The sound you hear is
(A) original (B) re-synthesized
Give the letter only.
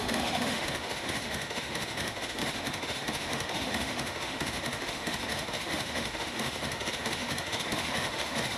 B